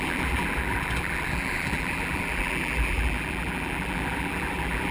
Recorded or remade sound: remade